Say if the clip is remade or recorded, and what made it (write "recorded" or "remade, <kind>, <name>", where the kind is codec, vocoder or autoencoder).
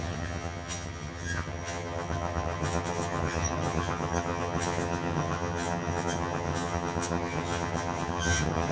remade, vocoder, HiFi-GAN